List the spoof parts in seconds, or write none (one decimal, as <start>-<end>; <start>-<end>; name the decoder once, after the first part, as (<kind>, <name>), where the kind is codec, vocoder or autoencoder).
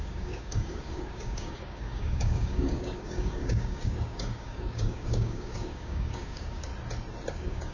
0.0-6.7 (codec, DAC); 7.3-7.7